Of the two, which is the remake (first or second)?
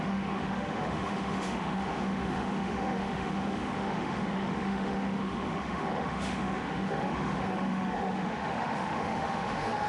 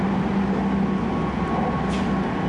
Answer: first